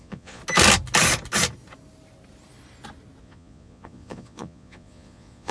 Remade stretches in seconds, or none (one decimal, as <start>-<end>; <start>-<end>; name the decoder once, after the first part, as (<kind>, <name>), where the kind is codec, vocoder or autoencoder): 0.0-0.4 (vocoder, Vocos); 3.2-5.5